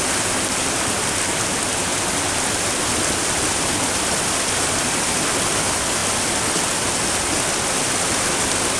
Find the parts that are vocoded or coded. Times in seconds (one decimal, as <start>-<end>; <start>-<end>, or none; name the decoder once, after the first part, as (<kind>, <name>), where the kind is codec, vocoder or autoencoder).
none